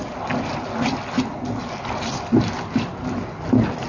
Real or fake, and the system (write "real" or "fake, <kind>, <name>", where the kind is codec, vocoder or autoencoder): real